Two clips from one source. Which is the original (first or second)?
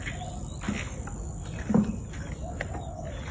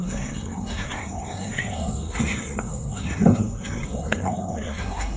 first